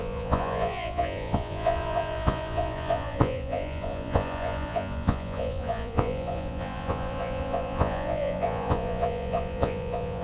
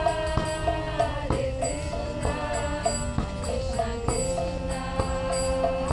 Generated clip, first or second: first